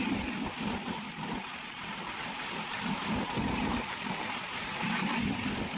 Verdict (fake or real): real